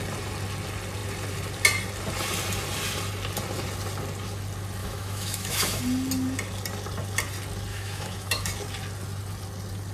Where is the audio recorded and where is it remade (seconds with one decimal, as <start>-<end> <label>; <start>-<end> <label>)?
0.0-4.8 recorded; 4.8-5.8 remade; 5.8-7.7 recorded; 7.7-8.5 remade; 8.5-9.9 recorded

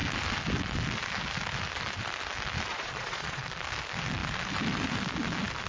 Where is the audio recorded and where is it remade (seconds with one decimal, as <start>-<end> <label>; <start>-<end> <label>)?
0.0-2.7 recorded; 2.7-3.4 remade; 3.4-5.7 recorded

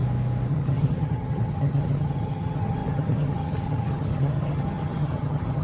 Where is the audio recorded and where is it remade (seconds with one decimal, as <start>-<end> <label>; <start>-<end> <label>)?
0.0-0.5 recorded; 0.5-5.6 remade

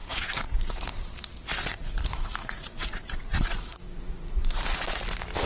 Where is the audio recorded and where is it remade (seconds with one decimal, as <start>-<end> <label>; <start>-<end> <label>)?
0.0-1.1 remade; 1.1-1.7 recorded; 1.7-5.0 remade; 5.0-5.5 recorded

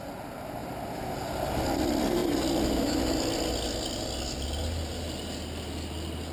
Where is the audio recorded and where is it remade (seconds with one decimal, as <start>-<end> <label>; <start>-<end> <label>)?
0.0-0.6 recorded; 0.6-1.1 remade; 1.1-6.3 recorded

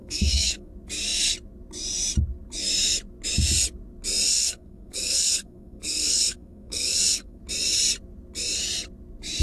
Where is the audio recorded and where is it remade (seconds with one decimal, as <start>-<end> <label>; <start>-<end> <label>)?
0.0-0.7 remade; 0.7-4.3 recorded; 4.3-7.4 remade; 7.4-9.4 recorded

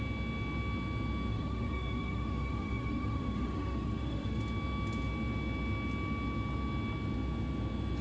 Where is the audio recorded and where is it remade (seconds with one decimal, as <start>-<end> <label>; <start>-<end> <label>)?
0.0-1.3 recorded; 1.3-4.4 remade; 4.4-8.0 recorded

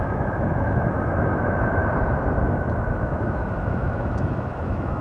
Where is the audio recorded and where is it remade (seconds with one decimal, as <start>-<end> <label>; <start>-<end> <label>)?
0.0-1.8 remade; 1.8-2.5 recorded; 2.5-5.0 remade